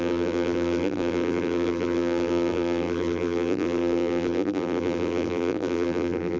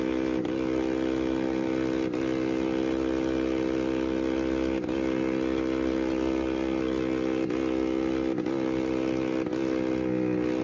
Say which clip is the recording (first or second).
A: second